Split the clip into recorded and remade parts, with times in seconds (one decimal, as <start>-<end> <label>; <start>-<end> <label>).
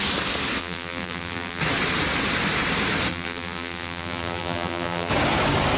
0.0-0.6 recorded; 0.6-1.6 remade; 1.6-3.1 recorded; 3.1-5.1 remade; 5.1-5.8 recorded